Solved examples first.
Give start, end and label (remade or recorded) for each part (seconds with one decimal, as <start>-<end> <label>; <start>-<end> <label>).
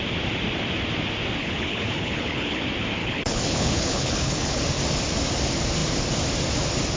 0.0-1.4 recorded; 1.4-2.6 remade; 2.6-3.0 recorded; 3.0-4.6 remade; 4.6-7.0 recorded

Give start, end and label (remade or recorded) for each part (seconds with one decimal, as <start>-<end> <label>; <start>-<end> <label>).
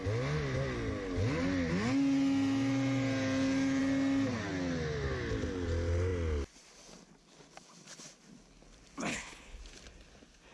0.0-9.1 recorded; 9.1-9.6 remade; 9.6-10.5 recorded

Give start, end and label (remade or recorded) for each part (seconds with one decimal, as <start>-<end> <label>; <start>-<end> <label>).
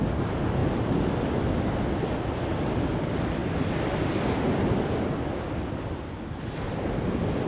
0.0-7.5 recorded